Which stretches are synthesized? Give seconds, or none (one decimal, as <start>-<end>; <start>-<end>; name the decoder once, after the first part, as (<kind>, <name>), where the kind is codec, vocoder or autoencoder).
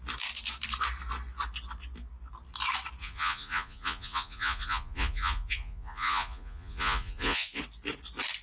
3.0-7.6 (vocoder, Vocos)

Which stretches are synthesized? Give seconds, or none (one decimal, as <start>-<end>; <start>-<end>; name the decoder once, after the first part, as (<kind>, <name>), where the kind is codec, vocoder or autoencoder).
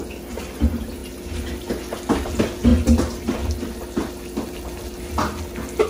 none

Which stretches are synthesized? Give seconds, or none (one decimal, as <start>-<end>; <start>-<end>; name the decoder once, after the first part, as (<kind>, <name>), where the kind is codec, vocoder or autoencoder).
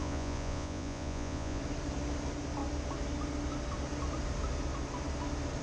0.0-1.6 (vocoder, Vocos)